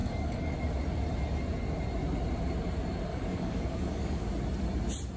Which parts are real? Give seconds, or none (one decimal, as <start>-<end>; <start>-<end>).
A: 0.6-3.1; 4.3-5.2